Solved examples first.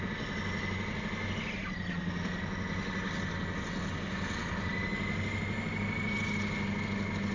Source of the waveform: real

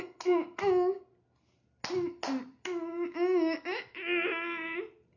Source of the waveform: real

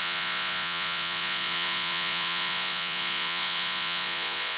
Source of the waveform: fake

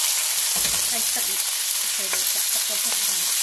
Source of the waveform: real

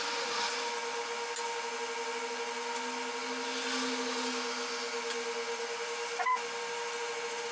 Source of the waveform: real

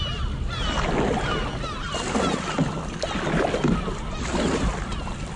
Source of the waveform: real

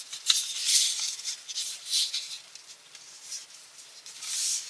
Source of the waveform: real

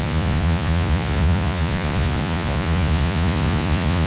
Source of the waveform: fake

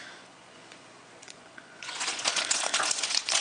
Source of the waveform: fake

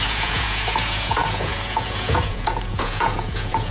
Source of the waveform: fake